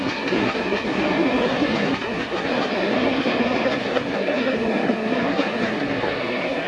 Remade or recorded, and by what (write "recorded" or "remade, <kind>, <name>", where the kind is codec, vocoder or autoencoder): remade, codec, SNAC